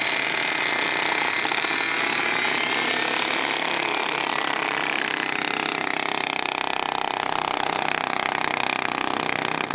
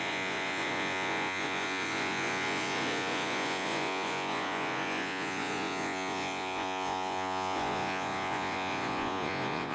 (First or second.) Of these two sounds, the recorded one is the first